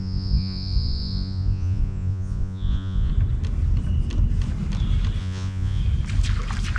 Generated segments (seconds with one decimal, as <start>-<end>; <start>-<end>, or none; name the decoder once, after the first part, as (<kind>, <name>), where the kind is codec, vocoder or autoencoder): 0.0-3.1 (vocoder, Vocos); 5.2-5.8